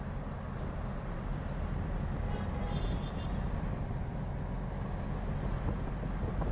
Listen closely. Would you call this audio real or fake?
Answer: real